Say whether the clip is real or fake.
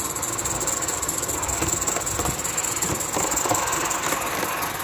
real